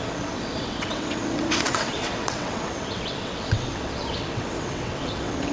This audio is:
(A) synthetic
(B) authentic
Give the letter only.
A